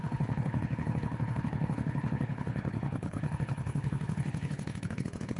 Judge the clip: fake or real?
fake